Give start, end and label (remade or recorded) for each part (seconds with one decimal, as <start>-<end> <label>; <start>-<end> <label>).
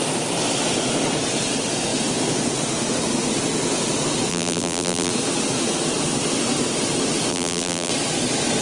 0.0-4.3 recorded; 4.3-5.1 remade; 5.1-7.3 recorded; 7.3-7.9 remade; 7.9-8.6 recorded